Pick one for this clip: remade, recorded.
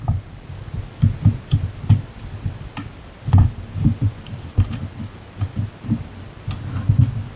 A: recorded